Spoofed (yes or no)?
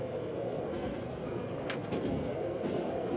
yes